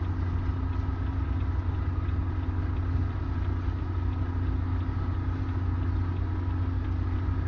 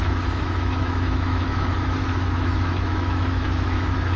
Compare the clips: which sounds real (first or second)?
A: first